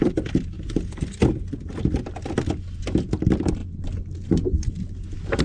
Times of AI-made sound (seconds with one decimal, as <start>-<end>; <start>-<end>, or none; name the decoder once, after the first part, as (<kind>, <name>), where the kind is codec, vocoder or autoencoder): none